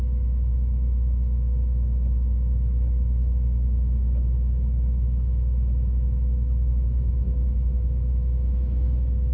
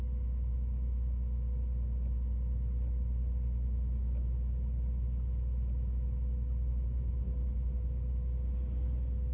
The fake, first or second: first